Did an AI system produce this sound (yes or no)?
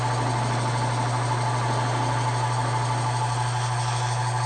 no